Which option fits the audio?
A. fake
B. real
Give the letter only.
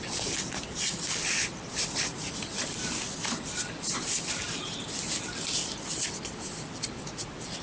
B